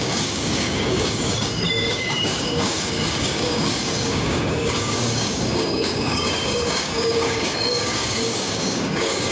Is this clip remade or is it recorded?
remade